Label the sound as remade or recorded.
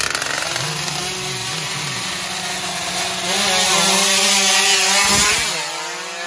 recorded